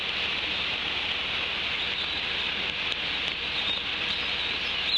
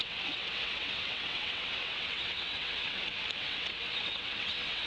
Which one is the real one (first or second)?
first